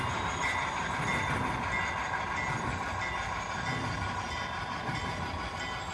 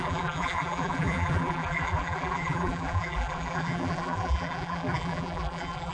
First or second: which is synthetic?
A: second